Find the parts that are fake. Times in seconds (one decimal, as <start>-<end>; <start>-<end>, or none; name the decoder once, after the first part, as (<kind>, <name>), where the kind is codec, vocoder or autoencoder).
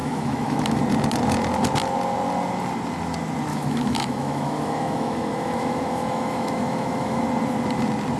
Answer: 0.0-0.8 (autoencoder, DAC-VAE); 3.5-7.2